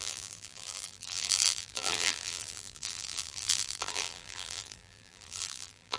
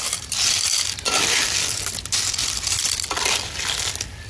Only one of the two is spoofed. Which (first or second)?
first